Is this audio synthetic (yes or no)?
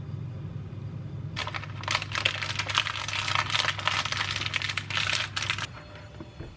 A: no